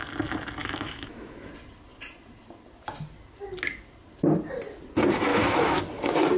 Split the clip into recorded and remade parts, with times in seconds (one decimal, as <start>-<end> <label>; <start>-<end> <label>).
0.0-0.6 recorded; 0.6-1.5 remade; 1.5-5.3 recorded; 5.3-5.8 remade; 5.8-6.4 recorded

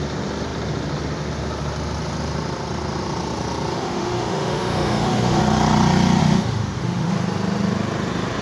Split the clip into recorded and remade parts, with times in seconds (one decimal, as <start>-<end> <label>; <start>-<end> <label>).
0.0-3.7 recorded; 3.7-5.4 remade; 5.4-6.2 recorded; 6.2-7.1 remade; 7.1-8.4 recorded

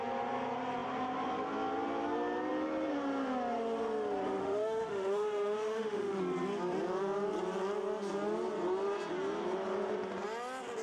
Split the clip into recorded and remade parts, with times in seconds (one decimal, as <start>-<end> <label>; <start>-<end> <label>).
0.0-4.4 recorded; 4.4-6.2 remade; 6.2-10.8 recorded

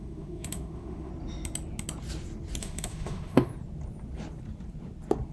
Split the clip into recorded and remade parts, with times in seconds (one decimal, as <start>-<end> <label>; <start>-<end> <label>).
0.0-1.1 remade; 1.1-2.6 recorded; 2.6-3.5 remade; 3.5-5.3 recorded

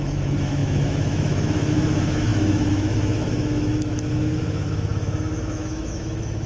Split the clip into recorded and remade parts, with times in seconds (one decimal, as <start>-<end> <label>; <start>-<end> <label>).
0.0-6.5 remade